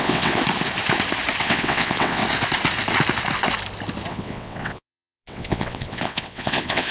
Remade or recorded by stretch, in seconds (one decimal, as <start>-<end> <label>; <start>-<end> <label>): 0.0-0.4 remade; 0.4-1.4 recorded; 1.4-2.2 remade; 2.2-4.1 recorded; 4.1-6.9 remade